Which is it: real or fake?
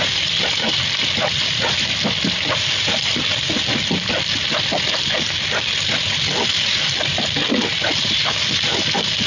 real